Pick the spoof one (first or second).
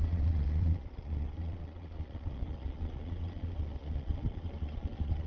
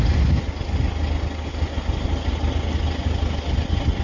first